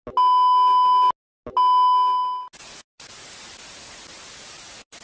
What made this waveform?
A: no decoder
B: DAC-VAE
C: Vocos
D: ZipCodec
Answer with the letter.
A